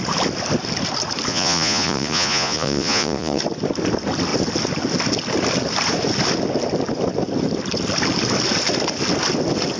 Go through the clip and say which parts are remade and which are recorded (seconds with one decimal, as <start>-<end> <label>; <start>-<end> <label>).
0.0-1.3 recorded; 1.3-3.4 remade; 3.4-9.8 recorded